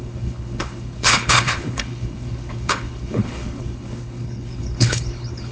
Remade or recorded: remade